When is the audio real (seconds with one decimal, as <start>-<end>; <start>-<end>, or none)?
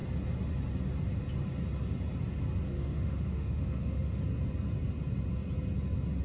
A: 0.0-2.7; 4.2-6.2